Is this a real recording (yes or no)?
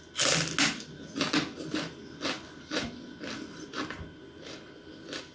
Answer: yes